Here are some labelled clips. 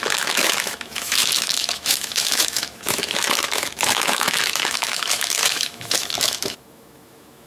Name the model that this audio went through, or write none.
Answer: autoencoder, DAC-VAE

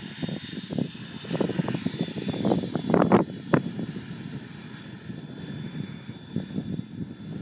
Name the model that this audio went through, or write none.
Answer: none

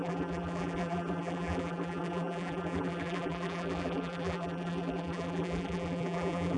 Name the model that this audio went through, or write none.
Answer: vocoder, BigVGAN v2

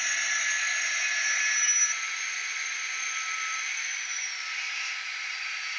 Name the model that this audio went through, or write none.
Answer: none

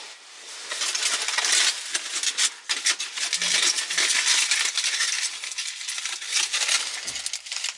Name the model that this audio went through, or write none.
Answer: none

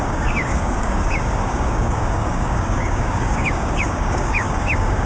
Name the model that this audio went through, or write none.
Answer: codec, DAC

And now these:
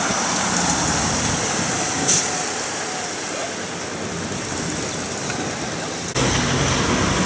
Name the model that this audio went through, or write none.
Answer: none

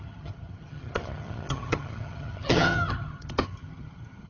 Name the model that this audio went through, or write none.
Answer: vocoder, HiFi-GAN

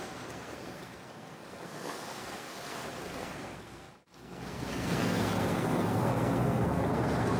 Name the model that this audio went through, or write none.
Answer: codec, SNAC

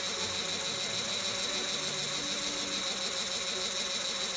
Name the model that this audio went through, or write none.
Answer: none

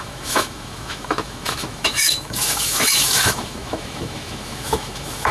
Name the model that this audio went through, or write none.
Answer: autoencoder, DAC-VAE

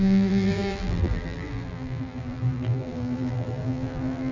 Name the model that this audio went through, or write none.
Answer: vocoder, BigVGAN v2